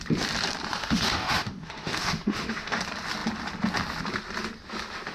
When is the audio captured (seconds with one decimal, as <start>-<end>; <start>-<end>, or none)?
0.0-0.8; 2.8-5.1